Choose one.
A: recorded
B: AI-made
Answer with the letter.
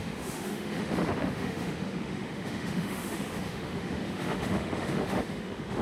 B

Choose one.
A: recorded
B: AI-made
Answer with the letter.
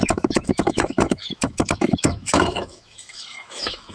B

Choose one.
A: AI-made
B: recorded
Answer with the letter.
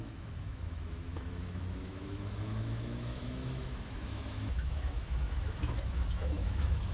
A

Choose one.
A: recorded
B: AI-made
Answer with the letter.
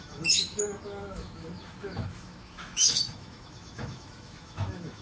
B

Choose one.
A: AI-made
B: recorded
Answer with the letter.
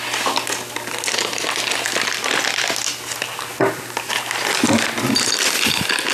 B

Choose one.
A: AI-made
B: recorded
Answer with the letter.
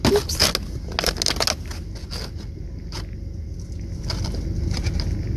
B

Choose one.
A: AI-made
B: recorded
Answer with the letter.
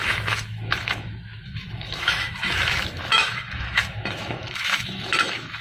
A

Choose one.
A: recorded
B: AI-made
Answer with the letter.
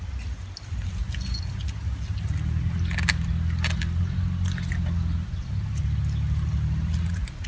A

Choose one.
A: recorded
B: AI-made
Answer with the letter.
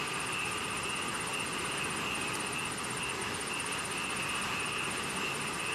A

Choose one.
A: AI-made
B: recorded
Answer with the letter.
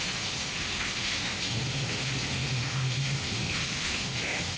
A